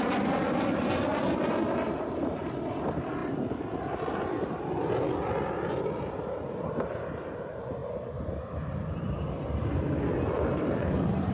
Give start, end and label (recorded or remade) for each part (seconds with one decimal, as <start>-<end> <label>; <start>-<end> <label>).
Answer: 0.0-1.1 remade; 1.1-2.1 recorded; 2.1-11.3 remade

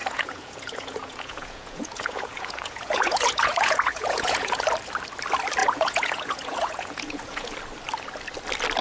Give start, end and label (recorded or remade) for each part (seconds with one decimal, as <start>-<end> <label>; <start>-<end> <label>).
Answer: 0.0-4.6 remade; 4.6-5.6 recorded; 5.6-7.5 remade; 7.5-8.8 recorded

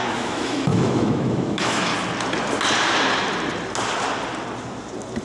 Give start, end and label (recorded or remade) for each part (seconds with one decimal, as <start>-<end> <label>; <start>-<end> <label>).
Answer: 0.0-1.9 remade; 1.9-5.2 recorded

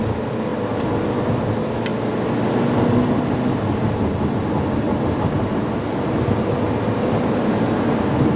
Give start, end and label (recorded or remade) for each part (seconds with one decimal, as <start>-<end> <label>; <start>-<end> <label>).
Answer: 0.0-8.4 recorded